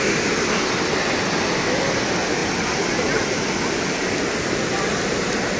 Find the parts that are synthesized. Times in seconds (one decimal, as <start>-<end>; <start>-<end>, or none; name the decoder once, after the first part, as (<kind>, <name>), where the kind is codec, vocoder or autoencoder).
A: none